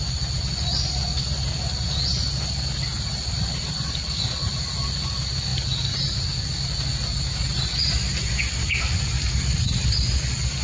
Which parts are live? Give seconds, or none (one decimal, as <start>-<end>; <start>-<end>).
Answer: 0.0-10.6